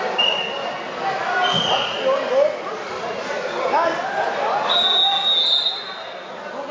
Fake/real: real